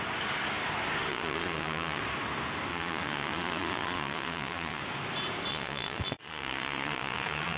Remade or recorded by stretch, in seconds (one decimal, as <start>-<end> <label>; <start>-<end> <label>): 0.0-1.1 recorded; 1.1-2.0 remade; 2.0-2.7 recorded; 2.7-4.8 remade; 4.8-5.5 recorded; 5.5-7.6 remade